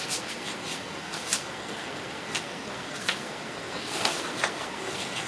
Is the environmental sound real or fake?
fake